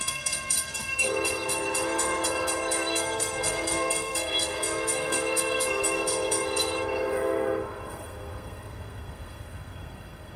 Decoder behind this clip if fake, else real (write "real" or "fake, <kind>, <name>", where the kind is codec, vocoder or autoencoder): fake, codec, SNAC